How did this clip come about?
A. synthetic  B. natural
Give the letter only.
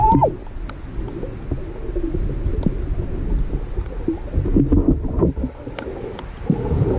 B